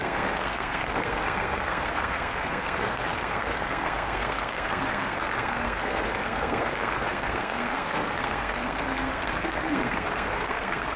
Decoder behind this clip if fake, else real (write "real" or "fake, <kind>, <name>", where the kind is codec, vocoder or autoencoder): fake, codec, SNAC